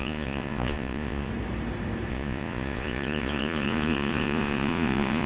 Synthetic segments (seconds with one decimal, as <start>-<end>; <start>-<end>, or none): 0.0-1.3; 2.1-5.3